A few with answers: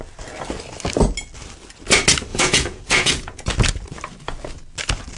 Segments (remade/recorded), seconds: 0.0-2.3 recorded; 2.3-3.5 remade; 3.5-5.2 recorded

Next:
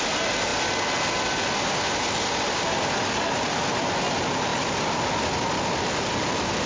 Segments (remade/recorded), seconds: 0.0-6.7 recorded

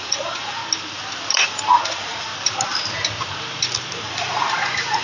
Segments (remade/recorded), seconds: 0.0-0.6 remade; 0.6-1.7 recorded; 1.7-2.3 remade; 2.3-4.0 recorded; 4.0-5.0 remade

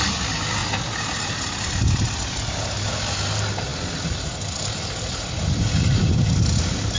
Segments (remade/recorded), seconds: 0.0-7.0 recorded

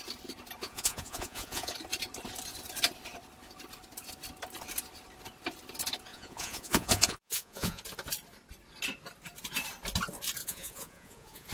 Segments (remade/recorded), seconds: 0.0-0.6 recorded; 0.6-1.7 remade; 1.7-6.1 recorded; 6.1-7.8 remade; 7.8-10.4 recorded; 10.4-11.5 remade

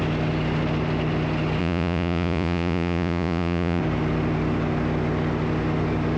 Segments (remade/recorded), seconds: 0.0-1.6 recorded; 1.6-3.8 remade; 3.8-6.2 recorded